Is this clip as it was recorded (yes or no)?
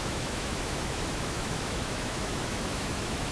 no